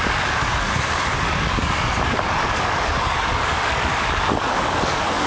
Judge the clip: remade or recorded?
remade